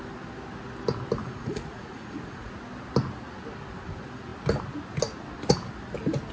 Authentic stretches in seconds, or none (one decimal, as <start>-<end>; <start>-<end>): 0.0-1.2; 2.5-6.3